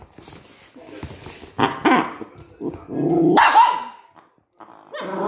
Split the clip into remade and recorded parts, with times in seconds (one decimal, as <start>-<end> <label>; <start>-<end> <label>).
0.0-5.3 recorded

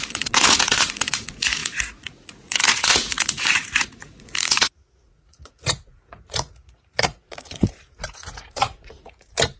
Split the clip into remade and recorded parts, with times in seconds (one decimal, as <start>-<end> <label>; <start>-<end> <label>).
0.0-9.6 remade

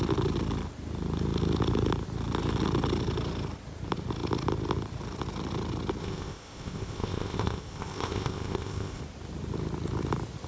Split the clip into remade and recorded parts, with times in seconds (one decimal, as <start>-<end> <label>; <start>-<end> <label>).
0.0-6.0 recorded; 6.0-9.0 remade; 9.0-10.5 recorded

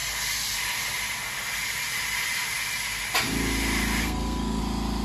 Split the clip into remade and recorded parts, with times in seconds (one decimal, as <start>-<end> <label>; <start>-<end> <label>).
0.0-4.0 recorded; 4.0-4.6 remade; 4.6-5.0 recorded

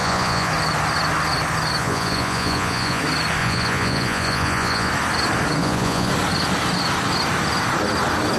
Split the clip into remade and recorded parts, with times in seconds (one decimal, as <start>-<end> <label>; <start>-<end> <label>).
0.0-0.5 remade; 0.5-1.8 recorded; 1.8-3.0 remade; 3.0-3.4 recorded; 3.4-4.9 remade; 4.9-5.6 recorded; 5.6-6.1 remade; 6.1-8.4 recorded